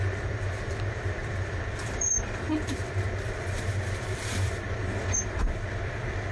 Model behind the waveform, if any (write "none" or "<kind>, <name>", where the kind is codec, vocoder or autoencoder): vocoder, BigVGAN v2